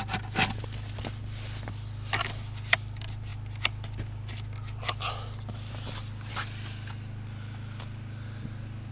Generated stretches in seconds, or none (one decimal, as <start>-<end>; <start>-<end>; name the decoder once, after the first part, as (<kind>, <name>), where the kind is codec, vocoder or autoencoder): none

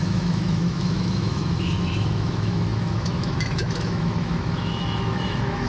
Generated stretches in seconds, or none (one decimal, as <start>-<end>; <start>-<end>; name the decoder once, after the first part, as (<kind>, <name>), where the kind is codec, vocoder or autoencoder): 0.0-5.7 (autoencoder, DAC-VAE)

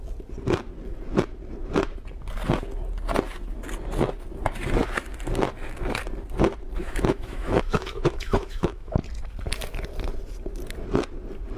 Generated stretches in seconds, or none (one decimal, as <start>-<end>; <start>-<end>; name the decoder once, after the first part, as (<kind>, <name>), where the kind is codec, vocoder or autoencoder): 6.8-9.0 (autoencoder, DAC-VAE)

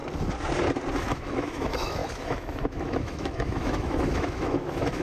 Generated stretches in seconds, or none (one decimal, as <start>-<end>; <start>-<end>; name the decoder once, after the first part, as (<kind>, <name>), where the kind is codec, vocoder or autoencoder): 0.9-5.0 (autoencoder, DAC-VAE)